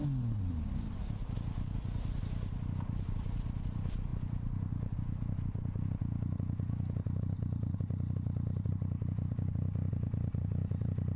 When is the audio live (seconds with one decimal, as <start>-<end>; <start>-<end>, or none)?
0.0-11.2